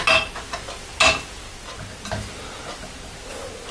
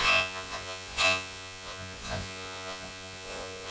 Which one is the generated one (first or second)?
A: second